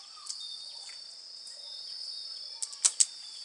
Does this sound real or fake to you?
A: real